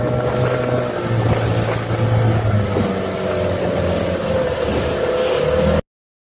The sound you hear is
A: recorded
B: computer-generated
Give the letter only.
A